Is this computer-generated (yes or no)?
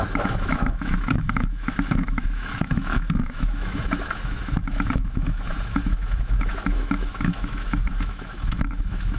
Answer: yes